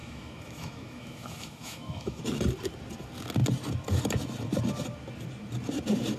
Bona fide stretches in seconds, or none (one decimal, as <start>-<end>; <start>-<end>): 2.2-6.2